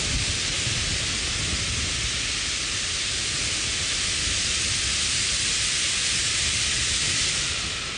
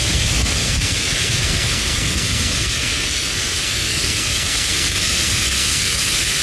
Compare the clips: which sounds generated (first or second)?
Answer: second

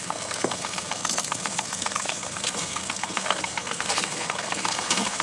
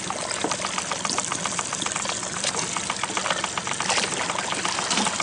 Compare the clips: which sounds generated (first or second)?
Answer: first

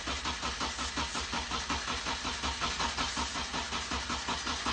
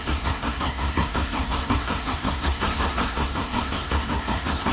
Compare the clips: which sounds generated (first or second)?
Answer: second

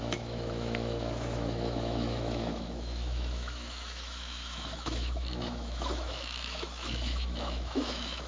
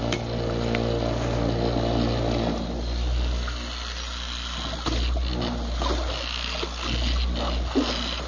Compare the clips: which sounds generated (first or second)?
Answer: first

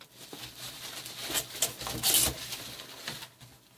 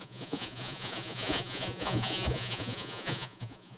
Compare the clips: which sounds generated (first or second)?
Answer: second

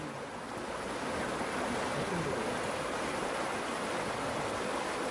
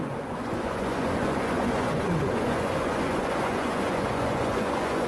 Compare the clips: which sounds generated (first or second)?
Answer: second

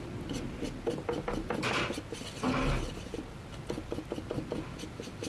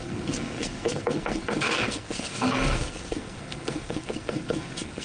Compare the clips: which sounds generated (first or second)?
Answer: second